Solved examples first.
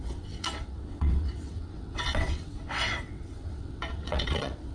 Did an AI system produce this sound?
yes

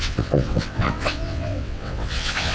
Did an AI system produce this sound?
yes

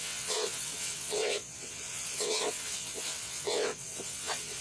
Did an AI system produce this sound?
yes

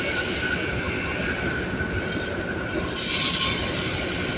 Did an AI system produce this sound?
no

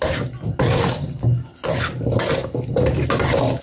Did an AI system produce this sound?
no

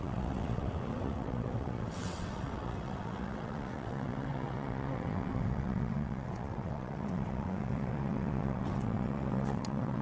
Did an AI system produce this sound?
yes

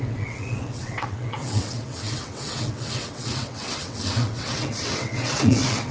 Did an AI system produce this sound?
yes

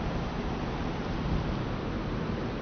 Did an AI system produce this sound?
no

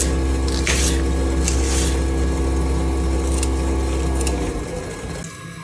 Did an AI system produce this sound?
no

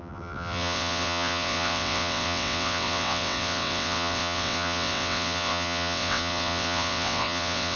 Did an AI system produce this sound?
yes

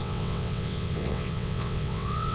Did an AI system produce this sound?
yes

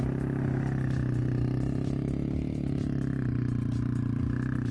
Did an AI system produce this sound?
no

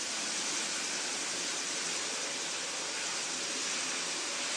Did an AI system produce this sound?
no